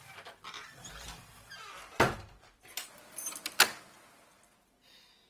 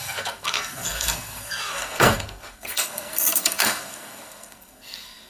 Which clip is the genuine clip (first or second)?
first